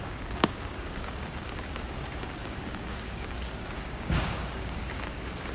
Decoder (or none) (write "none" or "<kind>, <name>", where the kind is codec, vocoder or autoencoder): codec, DAC